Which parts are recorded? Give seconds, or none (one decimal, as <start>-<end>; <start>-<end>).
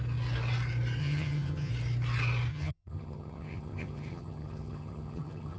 0.0-1.0; 1.7-2.5